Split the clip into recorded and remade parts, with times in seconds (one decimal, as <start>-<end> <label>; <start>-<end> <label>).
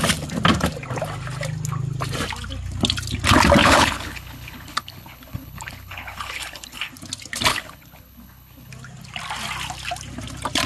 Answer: 0.0-3.6 recorded; 3.6-6.9 remade; 6.9-7.5 recorded; 7.5-8.7 remade; 8.7-10.7 recorded